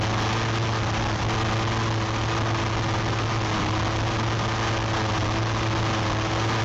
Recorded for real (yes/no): yes